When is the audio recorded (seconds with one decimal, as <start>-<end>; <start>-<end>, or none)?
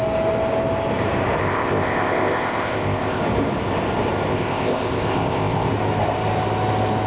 0.0-1.4; 3.2-4.3; 5.7-7.1